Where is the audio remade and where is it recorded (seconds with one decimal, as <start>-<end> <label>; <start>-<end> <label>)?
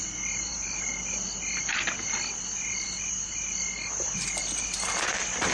0.0-5.5 recorded